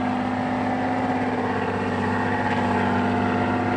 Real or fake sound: real